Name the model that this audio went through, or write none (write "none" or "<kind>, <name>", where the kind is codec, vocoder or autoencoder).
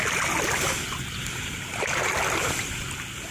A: none